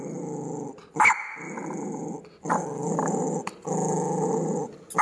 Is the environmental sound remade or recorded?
recorded